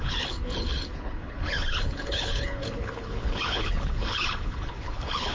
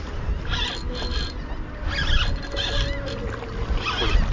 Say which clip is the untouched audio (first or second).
second